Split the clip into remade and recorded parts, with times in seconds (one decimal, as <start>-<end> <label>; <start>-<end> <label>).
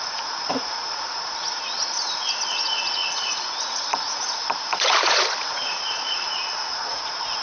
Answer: 0.0-7.4 remade